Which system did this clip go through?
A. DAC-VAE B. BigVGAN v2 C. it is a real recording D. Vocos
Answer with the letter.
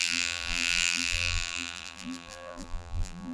B